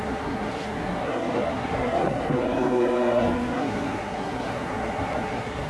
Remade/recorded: remade